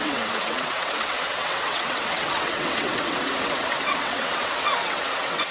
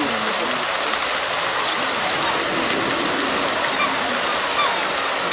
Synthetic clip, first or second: first